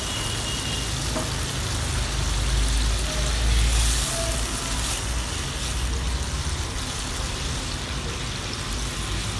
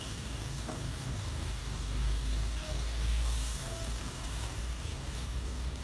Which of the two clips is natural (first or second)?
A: first